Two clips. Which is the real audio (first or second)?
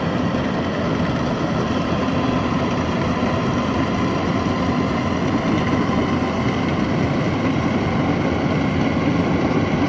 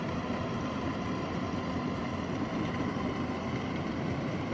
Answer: first